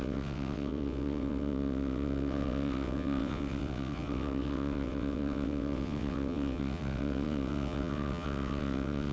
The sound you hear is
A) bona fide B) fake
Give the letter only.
B